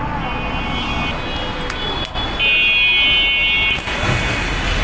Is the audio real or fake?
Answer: real